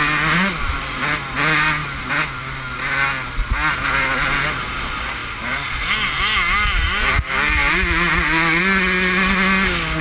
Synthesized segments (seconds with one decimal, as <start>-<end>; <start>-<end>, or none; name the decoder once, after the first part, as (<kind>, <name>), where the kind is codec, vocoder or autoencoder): none